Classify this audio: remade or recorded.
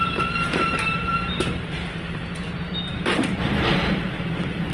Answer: remade